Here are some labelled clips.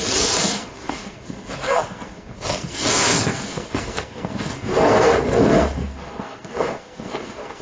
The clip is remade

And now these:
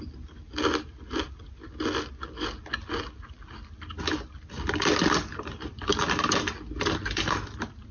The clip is recorded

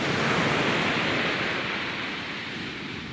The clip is recorded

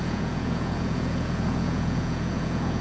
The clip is remade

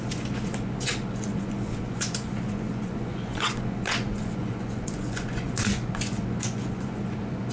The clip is remade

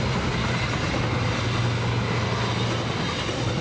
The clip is recorded